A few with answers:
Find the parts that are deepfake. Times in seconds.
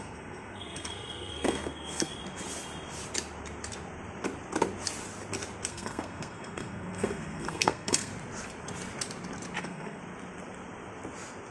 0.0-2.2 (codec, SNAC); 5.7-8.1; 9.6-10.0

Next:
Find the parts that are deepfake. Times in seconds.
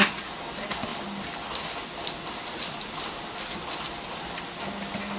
none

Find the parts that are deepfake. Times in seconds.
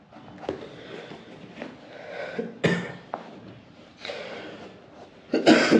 3.6-4.2 (vocoder, BigVGAN v2)